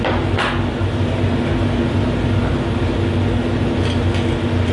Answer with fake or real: real